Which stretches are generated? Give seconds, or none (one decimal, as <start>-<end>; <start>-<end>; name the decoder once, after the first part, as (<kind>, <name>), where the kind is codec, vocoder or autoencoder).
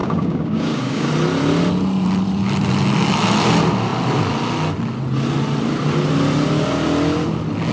0.0-1.1 (codec, DAC)